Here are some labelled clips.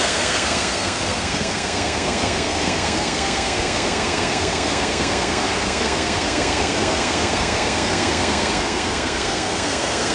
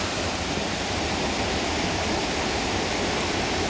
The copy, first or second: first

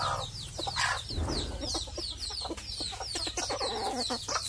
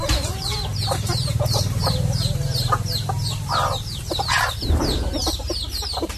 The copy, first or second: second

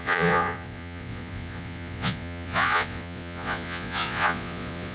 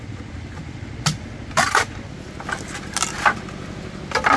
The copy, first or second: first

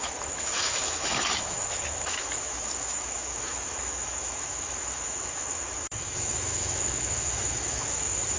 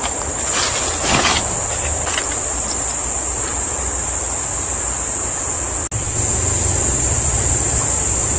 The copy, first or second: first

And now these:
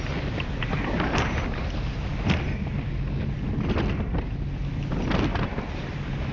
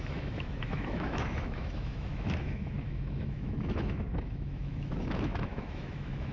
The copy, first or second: second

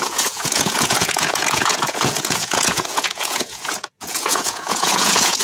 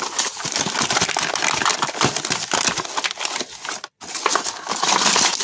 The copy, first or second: first